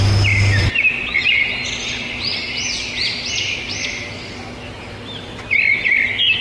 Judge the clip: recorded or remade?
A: remade